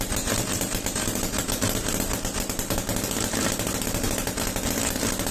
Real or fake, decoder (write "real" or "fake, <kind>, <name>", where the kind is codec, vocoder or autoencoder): fake, vocoder, BigVGAN v2